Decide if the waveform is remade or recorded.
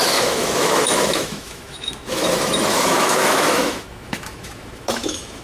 remade